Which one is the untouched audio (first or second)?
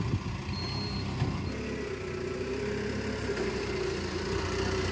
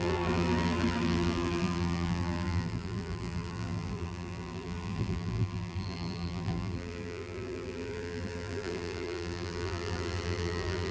first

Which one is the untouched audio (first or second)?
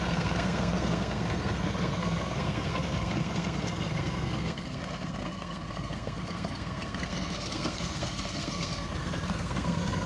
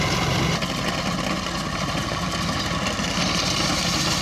second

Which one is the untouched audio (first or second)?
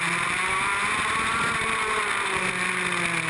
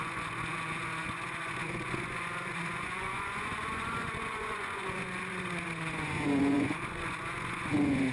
first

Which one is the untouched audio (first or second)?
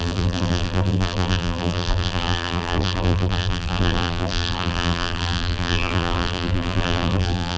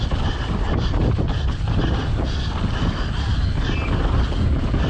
second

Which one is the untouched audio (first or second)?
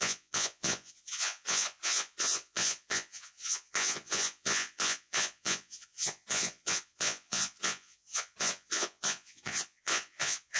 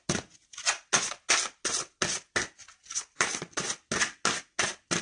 second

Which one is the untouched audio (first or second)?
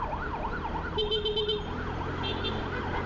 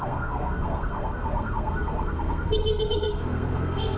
first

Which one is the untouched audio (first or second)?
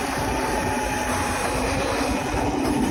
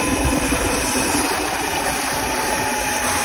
first